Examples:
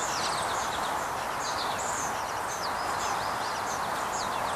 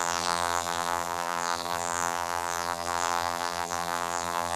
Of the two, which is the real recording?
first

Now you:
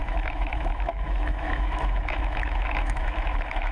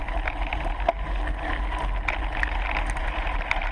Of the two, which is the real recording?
second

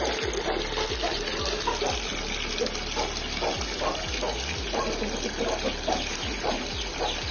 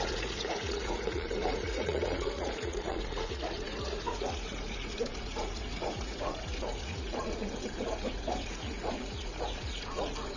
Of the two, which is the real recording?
first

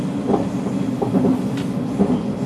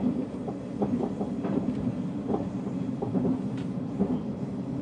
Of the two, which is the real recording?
first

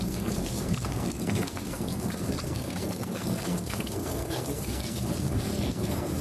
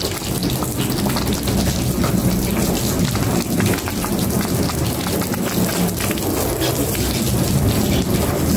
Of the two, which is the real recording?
second